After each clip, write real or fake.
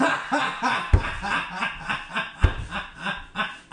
real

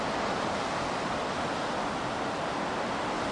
real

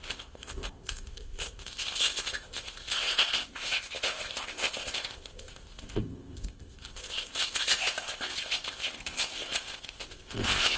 fake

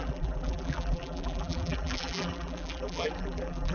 fake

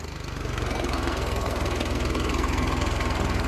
fake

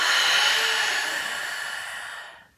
real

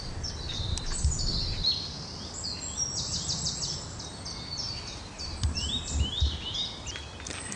real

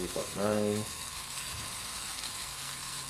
fake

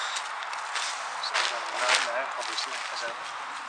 real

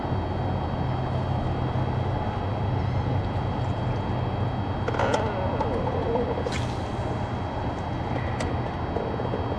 real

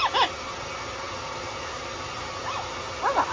real